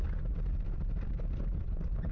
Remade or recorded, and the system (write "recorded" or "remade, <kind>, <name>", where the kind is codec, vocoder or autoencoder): recorded